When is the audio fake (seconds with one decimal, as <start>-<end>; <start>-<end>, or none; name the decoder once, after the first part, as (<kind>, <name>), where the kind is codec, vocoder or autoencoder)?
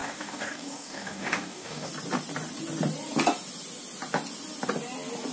0.0-1.9 (codec, DAC)